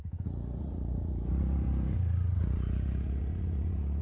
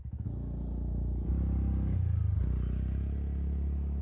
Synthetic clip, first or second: first